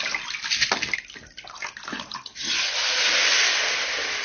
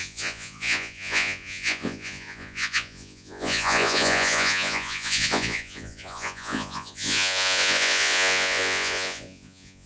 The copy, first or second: second